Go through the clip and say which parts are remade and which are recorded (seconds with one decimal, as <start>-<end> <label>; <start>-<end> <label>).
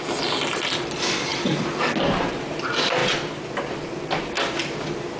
0.0-5.2 recorded